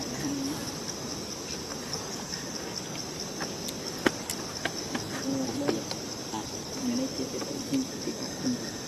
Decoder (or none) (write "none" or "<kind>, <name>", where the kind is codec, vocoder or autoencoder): none